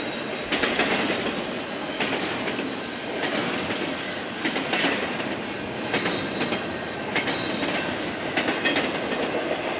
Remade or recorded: recorded